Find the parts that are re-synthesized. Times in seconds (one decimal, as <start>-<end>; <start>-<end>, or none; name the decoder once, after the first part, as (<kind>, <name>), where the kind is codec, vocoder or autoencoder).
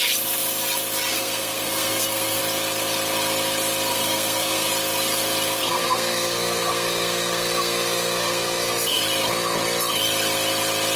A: 1.1-2.4 (codec, SNAC); 3.9-4.7; 5.6-9.0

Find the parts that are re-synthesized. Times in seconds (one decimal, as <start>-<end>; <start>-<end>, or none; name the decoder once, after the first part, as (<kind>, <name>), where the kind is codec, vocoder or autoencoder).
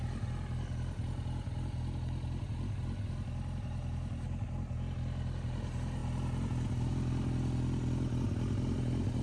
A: none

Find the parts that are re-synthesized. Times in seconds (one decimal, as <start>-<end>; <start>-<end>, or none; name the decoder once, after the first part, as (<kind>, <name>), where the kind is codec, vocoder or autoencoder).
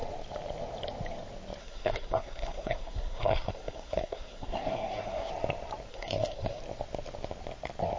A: 1.6-5.3 (codec, SNAC); 5.9-6.6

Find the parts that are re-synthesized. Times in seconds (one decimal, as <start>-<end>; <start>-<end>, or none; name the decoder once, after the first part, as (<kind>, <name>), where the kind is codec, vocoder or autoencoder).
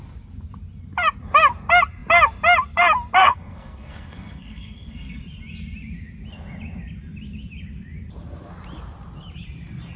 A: 3.2-5.2 (codec, SNAC)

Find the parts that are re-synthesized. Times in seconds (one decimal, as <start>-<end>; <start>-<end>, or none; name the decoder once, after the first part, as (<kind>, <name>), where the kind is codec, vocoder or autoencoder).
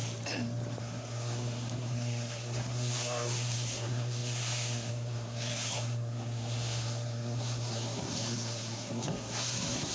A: 0.8-9.9 (codec, SNAC)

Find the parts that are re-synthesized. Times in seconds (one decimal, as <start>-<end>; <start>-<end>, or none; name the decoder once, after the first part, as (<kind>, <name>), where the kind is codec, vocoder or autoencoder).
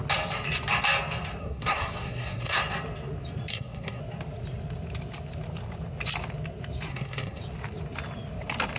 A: 1.4-2.6 (codec, SNAC); 3.5-4.0; 6.9-7.4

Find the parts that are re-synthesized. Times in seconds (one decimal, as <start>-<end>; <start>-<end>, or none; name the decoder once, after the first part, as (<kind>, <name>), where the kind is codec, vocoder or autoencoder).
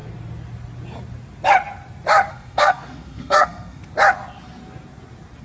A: 2.3-3.8 (codec, SNAC)